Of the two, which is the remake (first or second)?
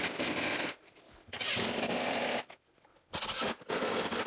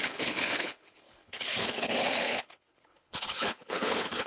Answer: second